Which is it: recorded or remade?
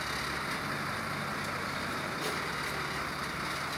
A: recorded